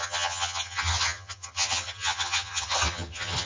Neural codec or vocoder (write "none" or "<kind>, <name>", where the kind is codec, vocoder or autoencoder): vocoder, HiFi-GAN